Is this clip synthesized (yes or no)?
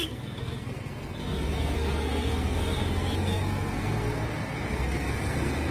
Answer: yes